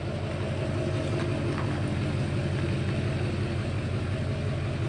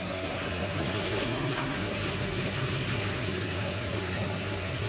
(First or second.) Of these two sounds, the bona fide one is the first